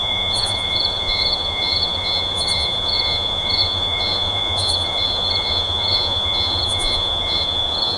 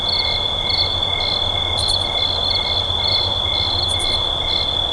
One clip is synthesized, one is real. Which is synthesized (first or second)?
first